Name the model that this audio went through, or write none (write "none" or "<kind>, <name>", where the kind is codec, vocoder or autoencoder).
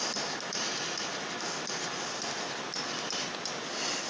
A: none